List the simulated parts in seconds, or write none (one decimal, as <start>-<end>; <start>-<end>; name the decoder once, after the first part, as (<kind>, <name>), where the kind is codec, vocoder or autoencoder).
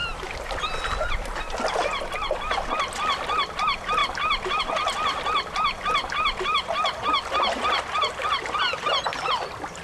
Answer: none